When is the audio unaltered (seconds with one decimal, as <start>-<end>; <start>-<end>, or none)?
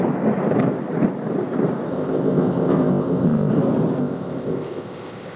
0.0-1.9; 3.5-4.0